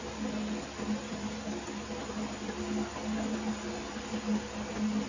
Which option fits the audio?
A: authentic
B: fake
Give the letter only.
A